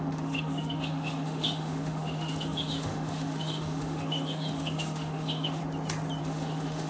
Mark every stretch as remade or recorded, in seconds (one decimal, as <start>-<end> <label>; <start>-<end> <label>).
0.0-5.6 remade; 5.6-6.2 recorded; 6.2-6.9 remade